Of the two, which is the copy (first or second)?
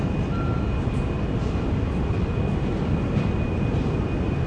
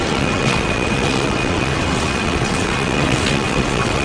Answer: second